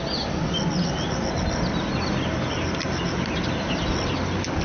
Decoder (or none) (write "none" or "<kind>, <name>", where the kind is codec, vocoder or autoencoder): none